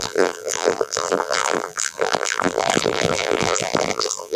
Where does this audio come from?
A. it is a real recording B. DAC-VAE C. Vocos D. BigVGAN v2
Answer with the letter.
D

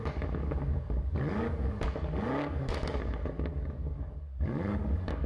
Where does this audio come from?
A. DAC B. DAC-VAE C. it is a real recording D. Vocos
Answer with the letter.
A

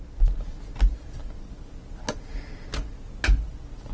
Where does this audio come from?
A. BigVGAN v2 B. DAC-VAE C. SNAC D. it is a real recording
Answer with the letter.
D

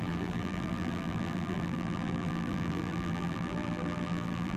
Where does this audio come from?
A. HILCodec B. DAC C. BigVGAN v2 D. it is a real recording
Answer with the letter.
C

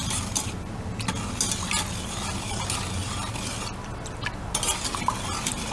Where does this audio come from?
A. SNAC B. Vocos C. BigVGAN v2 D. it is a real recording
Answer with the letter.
D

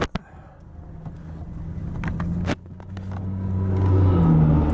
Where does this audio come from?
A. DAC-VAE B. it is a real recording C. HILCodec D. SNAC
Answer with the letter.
B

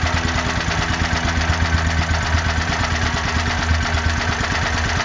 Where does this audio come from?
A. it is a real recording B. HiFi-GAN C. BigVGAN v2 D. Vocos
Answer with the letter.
A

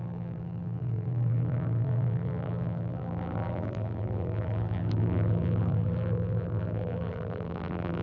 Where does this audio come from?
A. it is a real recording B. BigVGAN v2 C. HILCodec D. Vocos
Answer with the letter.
B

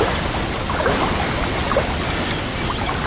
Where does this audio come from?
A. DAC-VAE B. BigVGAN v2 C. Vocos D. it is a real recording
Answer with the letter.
D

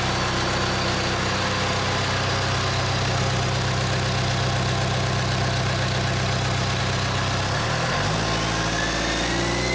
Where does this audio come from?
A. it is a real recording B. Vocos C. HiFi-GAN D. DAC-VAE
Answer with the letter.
A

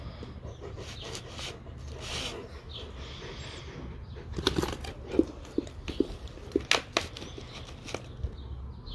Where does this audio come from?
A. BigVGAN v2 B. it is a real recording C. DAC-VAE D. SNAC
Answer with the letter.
B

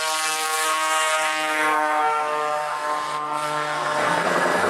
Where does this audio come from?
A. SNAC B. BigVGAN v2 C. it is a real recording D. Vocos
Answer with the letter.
A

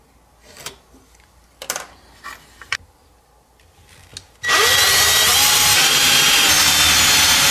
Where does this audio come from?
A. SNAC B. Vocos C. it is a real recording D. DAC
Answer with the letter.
C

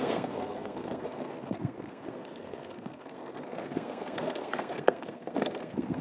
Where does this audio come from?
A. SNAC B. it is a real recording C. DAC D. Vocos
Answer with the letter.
A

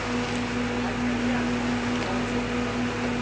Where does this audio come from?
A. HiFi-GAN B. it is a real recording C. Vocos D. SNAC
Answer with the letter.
B